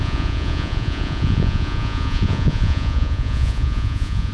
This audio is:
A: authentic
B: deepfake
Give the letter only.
B